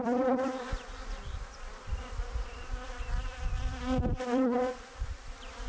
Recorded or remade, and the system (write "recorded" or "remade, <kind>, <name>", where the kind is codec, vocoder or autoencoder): remade, vocoder, BigVGAN v2